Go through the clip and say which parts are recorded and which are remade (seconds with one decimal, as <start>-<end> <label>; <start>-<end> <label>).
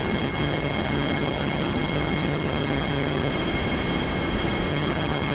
0.0-3.3 remade; 3.3-4.7 recorded; 4.7-5.3 remade